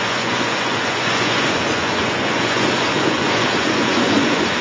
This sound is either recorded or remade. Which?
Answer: remade